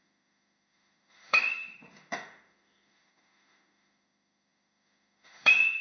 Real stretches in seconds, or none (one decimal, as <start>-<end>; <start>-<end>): none